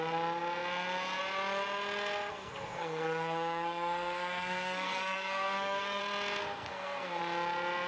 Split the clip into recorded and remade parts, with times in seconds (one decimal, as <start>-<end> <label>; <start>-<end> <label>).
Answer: 0.0-2.3 recorded; 2.3-6.0 remade; 6.0-6.4 recorded; 6.4-7.2 remade; 7.2-7.9 recorded